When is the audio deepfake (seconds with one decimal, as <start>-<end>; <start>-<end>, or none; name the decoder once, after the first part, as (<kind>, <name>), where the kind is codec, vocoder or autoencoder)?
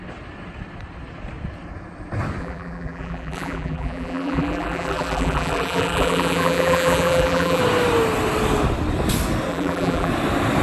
2.4-7.6 (vocoder, BigVGAN v2); 9.5-10.1